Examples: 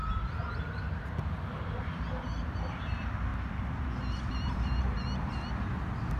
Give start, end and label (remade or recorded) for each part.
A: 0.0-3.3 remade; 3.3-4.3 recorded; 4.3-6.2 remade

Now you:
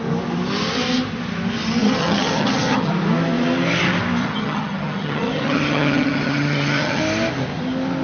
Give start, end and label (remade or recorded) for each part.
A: 0.0-1.8 recorded; 1.8-2.9 remade; 2.9-4.2 recorded; 4.2-7.0 remade; 7.0-8.0 recorded

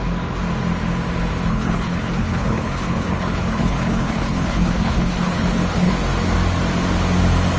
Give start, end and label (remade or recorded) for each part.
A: 0.0-1.5 recorded; 1.5-5.9 remade; 5.9-7.6 recorded

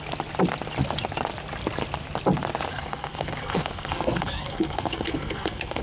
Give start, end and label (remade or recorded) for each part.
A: 0.0-2.7 recorded; 2.7-5.8 remade

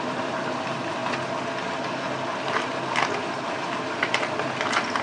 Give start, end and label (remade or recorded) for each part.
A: 0.0-5.0 recorded

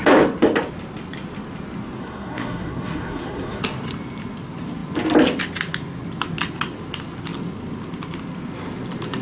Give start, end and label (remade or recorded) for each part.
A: 0.0-2.0 recorded; 2.0-3.6 remade; 3.6-9.2 recorded

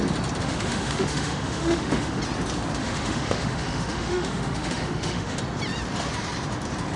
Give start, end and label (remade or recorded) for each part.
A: 0.0-0.4 recorded; 0.4-2.2 remade; 2.2-2.8 recorded; 2.8-5.4 remade; 5.4-7.0 recorded

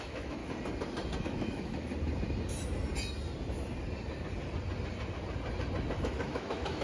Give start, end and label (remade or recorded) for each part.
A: 0.0-0.4 remade; 0.4-1.2 recorded; 1.2-1.9 remade; 1.9-6.0 recorded; 6.0-6.8 remade